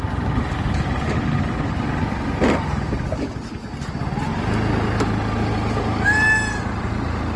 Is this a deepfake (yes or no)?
no